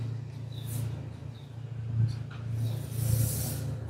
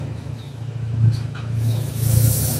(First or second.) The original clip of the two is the first